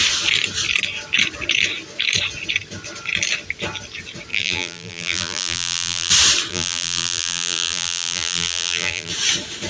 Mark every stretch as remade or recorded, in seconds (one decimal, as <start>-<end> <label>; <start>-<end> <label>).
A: 0.0-4.3 recorded; 4.3-6.1 remade; 6.1-6.5 recorded; 6.5-9.1 remade; 9.1-9.7 recorded